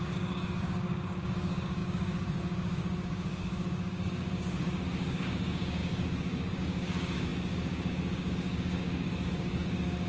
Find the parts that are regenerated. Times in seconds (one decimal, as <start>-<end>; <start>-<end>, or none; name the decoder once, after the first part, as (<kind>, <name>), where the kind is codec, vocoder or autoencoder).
0.0-10.1 (codec, DAC)